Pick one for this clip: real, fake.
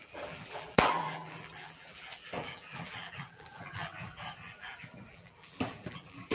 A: fake